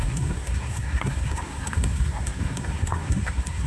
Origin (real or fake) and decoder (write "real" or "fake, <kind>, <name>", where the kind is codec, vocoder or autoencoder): fake, codec, SNAC